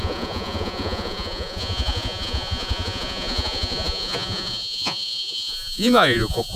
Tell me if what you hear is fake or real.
fake